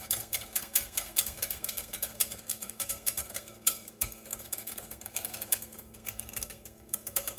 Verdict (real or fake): fake